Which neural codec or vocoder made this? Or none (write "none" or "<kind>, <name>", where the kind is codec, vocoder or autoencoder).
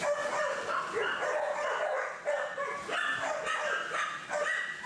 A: none